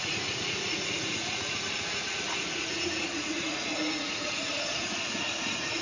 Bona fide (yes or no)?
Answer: no